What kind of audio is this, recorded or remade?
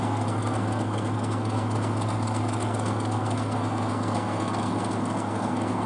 remade